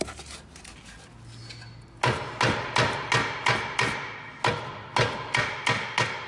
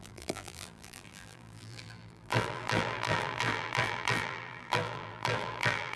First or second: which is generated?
second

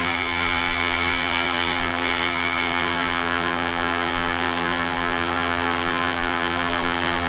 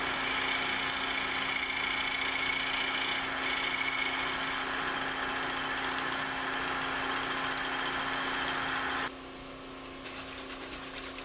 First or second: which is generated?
first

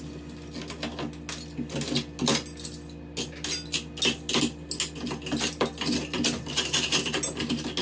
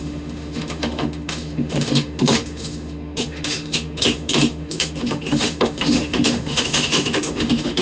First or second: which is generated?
second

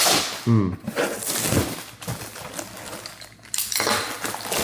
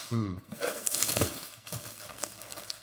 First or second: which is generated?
second